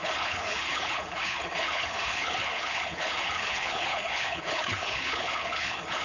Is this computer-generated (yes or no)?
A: yes